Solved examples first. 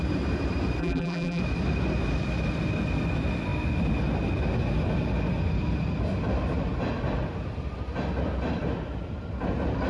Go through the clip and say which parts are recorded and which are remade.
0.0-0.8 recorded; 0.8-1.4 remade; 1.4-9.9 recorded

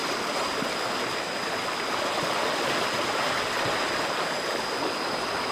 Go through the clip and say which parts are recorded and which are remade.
0.0-5.5 recorded

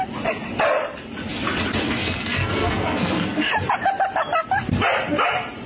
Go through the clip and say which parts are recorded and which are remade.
0.0-2.0 recorded; 2.0-3.5 remade; 3.5-5.7 recorded

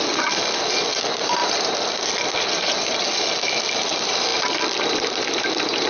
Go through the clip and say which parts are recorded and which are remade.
0.0-5.9 recorded